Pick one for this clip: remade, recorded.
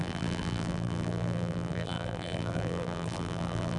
remade